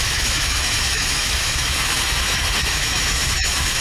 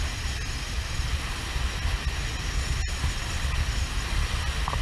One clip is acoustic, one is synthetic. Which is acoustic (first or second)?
second